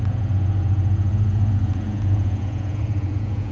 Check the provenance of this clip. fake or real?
fake